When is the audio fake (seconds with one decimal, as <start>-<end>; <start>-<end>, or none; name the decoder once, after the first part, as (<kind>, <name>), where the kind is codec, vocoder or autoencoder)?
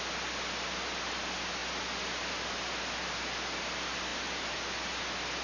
none